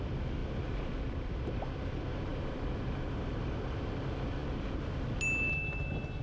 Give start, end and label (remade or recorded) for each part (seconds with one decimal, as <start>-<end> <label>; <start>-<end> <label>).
0.0-2.3 recorded; 2.3-3.0 remade; 3.0-6.2 recorded